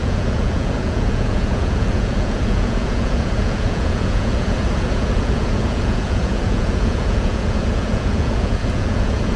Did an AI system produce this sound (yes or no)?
yes